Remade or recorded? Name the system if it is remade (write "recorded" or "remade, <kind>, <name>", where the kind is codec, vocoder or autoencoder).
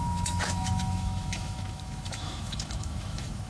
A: remade, autoencoder, DAC-VAE